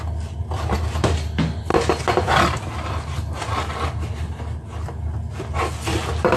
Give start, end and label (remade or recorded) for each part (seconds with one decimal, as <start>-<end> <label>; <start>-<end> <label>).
0.0-6.4 recorded